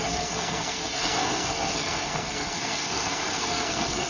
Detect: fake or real fake